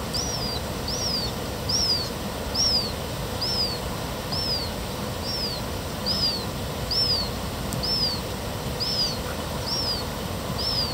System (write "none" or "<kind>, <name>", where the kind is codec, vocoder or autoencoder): none